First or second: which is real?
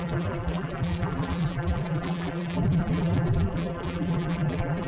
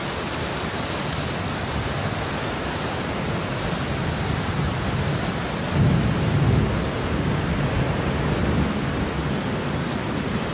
second